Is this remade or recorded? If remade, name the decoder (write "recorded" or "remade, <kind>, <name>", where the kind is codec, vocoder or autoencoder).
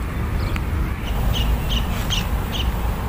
recorded